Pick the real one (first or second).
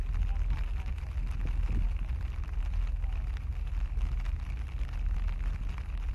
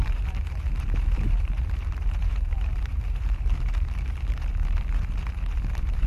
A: first